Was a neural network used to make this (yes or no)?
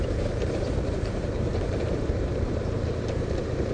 yes